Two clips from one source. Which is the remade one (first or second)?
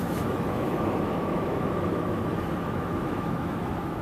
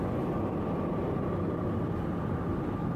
first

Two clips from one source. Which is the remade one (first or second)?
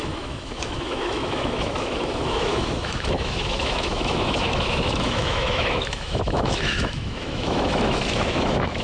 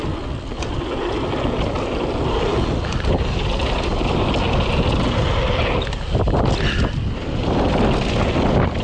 first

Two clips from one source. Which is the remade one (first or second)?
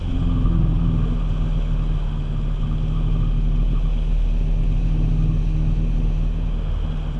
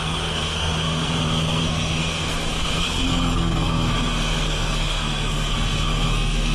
second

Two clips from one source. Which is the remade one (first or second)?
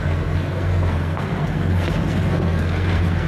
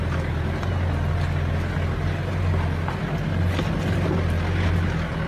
first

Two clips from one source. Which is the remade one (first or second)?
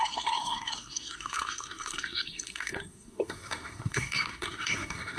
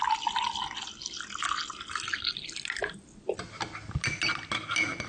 first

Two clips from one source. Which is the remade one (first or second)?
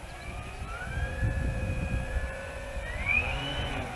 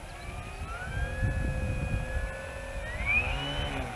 first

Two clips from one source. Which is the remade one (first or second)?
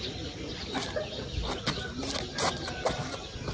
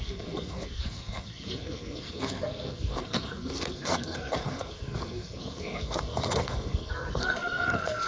second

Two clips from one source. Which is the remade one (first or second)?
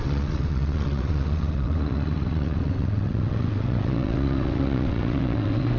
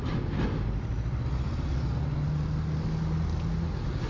first